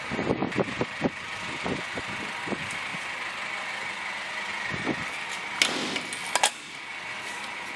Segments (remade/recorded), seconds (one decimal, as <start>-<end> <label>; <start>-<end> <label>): 0.0-7.8 recorded